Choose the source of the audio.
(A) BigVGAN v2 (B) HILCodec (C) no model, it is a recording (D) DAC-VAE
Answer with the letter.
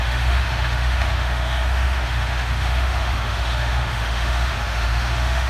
D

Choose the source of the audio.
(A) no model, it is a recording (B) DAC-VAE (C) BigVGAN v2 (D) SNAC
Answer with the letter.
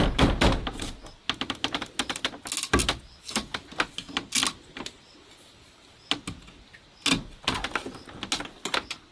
A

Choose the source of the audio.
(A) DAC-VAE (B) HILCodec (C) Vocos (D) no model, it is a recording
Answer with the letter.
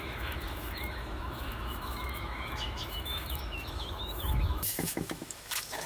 A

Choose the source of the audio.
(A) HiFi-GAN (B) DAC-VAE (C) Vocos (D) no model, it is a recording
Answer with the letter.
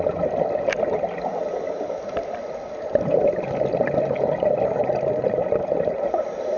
D